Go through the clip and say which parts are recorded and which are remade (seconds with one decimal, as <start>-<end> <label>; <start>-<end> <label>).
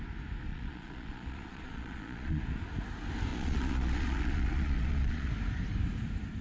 0.0-0.5 recorded; 0.5-2.4 remade; 2.4-3.3 recorded; 3.3-5.3 remade; 5.3-6.4 recorded